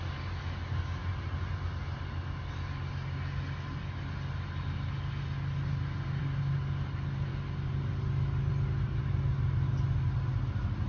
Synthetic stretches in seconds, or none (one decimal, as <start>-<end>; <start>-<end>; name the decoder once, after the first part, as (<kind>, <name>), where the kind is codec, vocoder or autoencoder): none